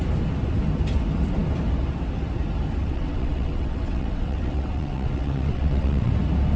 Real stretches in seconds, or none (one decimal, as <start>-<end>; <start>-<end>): 0.0-2.8; 6.1-6.6